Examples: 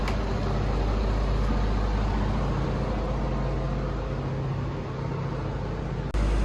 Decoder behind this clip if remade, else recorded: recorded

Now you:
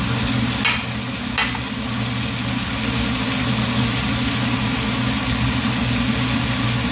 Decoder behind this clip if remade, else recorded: recorded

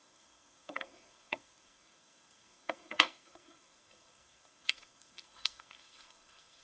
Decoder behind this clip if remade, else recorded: remade, codec, SNAC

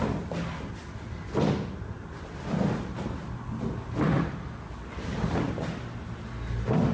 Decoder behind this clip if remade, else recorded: recorded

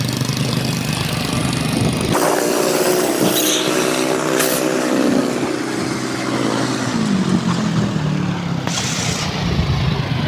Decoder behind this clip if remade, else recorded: recorded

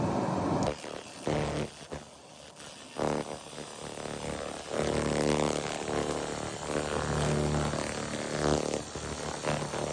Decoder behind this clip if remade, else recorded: recorded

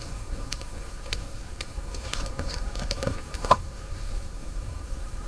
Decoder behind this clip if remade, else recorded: remade, codec, SNAC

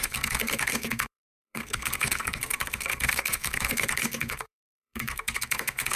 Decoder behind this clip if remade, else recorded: remade, codec, SNAC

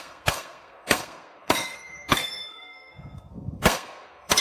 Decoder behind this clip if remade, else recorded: remade, codec, SNAC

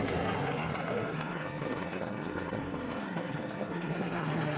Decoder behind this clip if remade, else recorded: remade, codec, SNAC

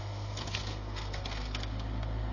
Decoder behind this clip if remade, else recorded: remade, codec, SNAC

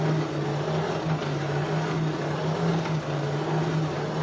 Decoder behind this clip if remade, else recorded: recorded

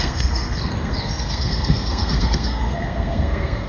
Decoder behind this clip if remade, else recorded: remade, codec, SNAC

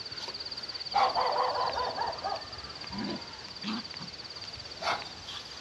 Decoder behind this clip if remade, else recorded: recorded